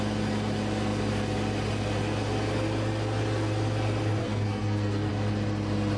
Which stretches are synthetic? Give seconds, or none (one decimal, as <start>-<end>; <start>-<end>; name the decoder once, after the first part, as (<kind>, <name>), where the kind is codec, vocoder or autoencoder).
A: 4.2-5.1 (codec, SNAC)